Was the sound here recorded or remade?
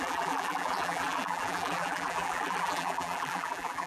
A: remade